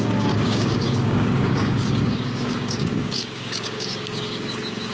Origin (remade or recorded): remade